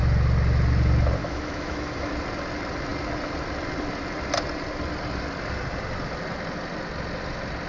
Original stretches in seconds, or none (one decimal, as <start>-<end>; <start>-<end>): 0.0-1.2; 2.1-7.7